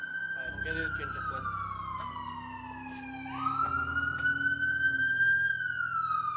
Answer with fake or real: real